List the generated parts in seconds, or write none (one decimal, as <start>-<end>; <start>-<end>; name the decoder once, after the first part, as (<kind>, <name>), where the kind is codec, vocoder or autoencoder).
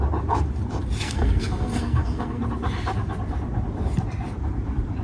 1.0-2.4 (codec, SNAC)